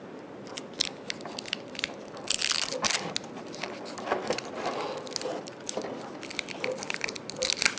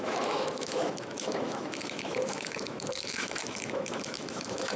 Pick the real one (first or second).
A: first